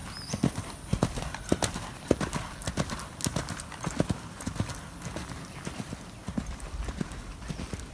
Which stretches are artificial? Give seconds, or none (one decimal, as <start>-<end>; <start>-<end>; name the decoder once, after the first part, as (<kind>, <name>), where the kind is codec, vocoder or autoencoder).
none